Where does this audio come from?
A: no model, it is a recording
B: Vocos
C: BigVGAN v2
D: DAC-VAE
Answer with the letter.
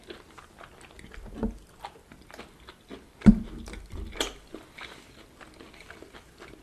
A